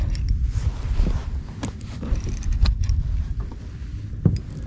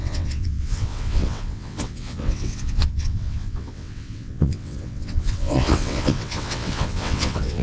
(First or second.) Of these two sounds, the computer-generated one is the second